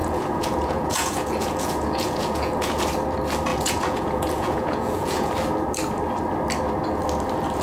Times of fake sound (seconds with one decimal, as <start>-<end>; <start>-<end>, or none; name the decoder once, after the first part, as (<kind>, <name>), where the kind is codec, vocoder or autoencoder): 0.0-2.8 (vocoder, Vocos); 3.5-5.3